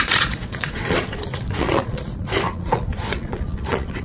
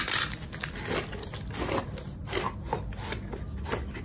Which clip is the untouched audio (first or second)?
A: second